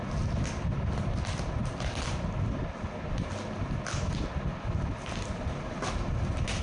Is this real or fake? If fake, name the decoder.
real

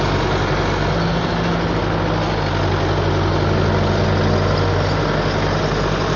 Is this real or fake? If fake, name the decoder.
real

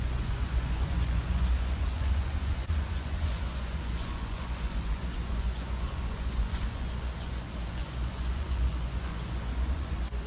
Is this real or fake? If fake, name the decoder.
fake, vocoder, Vocos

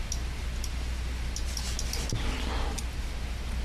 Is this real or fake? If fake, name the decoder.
real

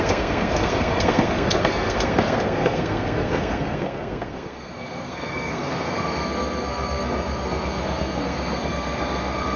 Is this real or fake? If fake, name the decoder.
fake, codec, SNAC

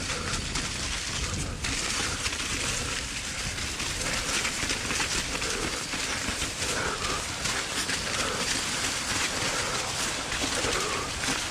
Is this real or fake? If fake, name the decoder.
real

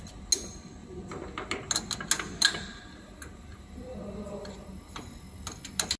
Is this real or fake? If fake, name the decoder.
real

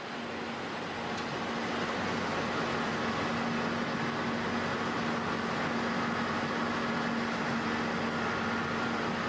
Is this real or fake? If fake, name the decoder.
real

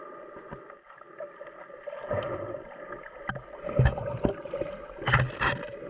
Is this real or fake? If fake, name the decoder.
real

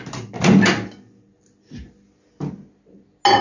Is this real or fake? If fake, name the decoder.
real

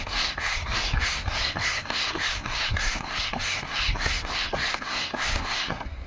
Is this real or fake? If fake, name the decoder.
fake, codec, SNAC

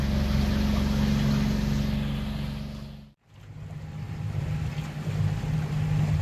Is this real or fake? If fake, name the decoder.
real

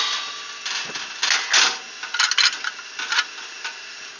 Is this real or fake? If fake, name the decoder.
real